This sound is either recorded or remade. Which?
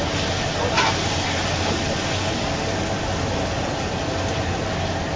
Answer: recorded